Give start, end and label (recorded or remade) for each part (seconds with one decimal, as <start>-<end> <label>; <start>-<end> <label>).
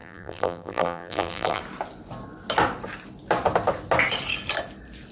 0.0-1.6 remade; 1.6-5.1 recorded